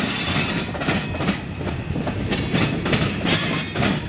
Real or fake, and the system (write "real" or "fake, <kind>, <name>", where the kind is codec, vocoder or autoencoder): real